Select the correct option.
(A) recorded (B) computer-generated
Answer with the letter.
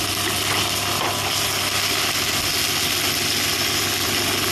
A